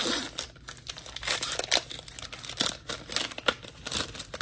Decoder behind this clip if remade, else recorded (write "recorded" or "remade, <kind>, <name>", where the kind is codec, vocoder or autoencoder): recorded